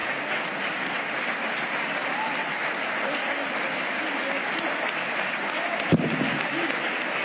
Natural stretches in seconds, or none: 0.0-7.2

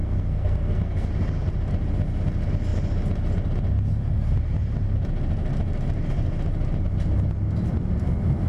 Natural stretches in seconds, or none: 1.1-8.5

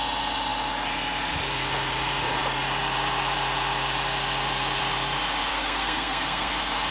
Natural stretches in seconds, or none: 0.0-5.5; 6.5-6.9